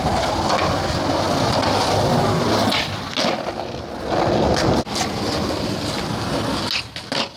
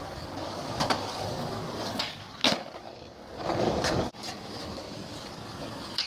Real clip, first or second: first